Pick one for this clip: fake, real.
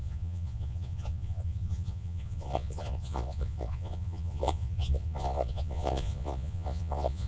fake